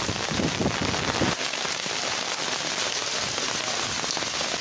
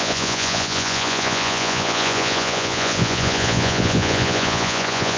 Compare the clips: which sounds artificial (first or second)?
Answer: second